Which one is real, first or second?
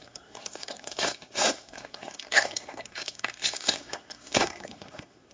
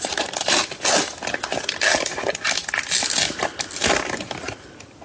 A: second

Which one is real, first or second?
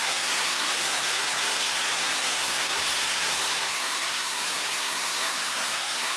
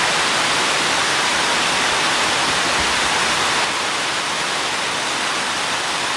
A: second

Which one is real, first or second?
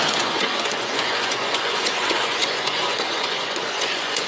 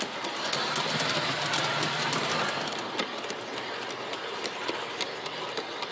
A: second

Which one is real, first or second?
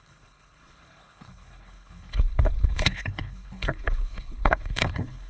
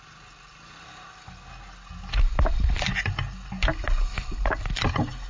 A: second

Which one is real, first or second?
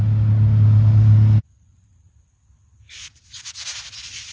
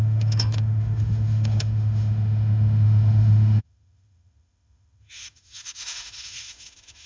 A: first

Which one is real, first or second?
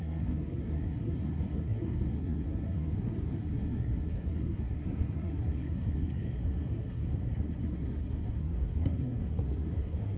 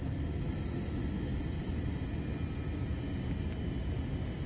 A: second